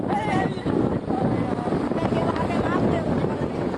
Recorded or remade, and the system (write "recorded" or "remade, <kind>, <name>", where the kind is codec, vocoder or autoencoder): recorded